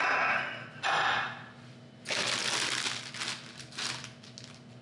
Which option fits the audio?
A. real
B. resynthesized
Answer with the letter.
A